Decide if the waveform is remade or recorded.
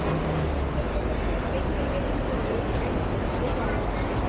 recorded